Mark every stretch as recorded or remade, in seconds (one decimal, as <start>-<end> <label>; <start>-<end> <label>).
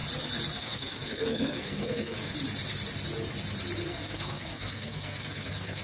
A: 0.0-0.6 recorded; 0.6-2.3 remade; 2.3-3.9 recorded; 3.9-5.8 remade